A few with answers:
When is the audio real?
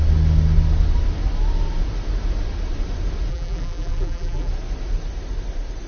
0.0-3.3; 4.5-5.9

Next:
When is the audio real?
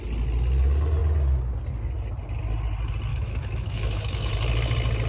0.0-3.1; 4.3-5.1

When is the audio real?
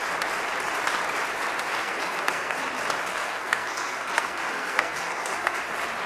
0.0-1.7; 2.6-3.1; 5.6-6.1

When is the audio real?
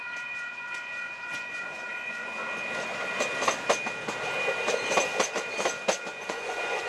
2.3-6.1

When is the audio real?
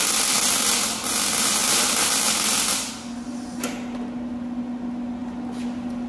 0.0-1.6; 2.1-6.1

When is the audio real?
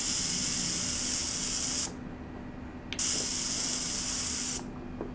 0.0-5.1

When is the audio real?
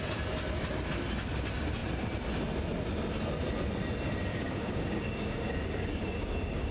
0.0-4.3